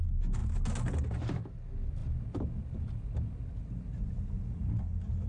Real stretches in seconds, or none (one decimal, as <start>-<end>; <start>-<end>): 0.0-5.3